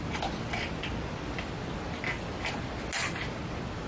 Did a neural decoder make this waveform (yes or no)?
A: no